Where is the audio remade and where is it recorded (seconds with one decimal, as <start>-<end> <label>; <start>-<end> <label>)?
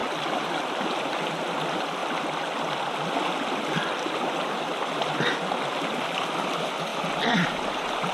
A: 0.0-8.1 recorded